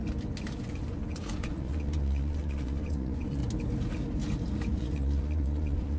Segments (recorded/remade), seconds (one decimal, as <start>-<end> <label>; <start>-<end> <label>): 0.0-0.6 recorded; 0.6-3.4 remade; 3.4-4.7 recorded; 4.7-6.0 remade